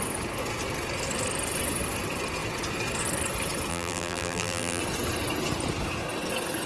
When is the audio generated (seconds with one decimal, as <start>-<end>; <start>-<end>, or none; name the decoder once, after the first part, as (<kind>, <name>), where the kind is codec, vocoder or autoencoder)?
3.7-4.8 (vocoder, BigVGAN v2)